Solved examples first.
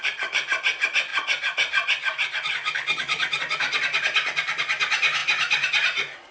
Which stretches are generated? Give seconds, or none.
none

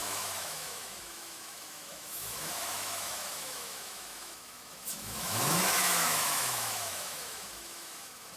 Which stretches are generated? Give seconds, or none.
0.0-8.4

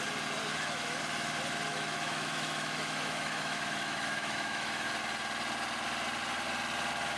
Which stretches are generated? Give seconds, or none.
0.4-1.0; 1.7-4.9